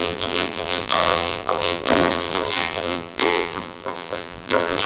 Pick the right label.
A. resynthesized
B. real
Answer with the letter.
A